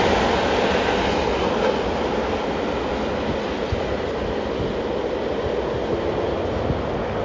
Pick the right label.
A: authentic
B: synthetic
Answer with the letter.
A